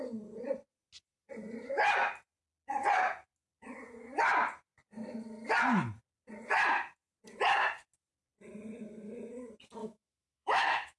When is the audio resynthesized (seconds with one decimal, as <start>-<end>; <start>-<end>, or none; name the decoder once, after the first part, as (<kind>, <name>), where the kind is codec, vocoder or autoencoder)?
9.8-11.0 (autoencoder, DAC-VAE)

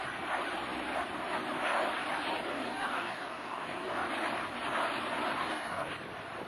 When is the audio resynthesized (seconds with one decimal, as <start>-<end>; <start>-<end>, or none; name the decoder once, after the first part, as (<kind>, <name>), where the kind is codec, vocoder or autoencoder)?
2.5-4.1 (codec, DAC); 5.4-5.9

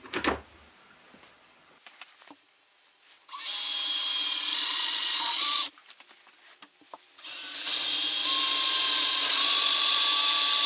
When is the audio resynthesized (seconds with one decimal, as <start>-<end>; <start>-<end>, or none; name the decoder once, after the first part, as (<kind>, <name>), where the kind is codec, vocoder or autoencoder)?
4.5-5.7 (vocoder, Vocos); 9.0-10.0

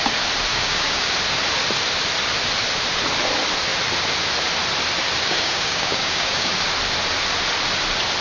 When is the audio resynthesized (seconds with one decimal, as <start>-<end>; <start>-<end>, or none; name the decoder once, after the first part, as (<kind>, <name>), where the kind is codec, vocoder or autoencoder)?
0.5-1.1 (codec, DAC); 5.2-6.5

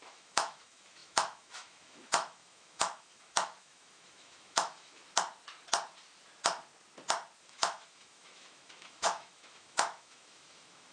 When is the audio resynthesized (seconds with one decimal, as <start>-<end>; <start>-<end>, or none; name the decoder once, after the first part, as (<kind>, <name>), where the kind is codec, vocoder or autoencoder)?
0.0-5.0 (autoencoder, DAC-VAE); 7.4-10.9

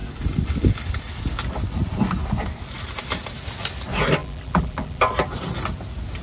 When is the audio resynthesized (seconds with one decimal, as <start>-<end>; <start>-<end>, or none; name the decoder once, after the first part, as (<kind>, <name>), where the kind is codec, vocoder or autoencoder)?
4.2-5.0 (vocoder, BigVGAN v2)